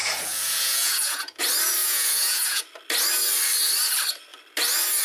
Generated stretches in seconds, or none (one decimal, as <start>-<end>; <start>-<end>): 0.0-1.4; 1.8-2.6